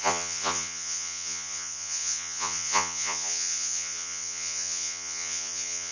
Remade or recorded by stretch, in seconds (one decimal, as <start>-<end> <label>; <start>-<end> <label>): 0.0-5.9 remade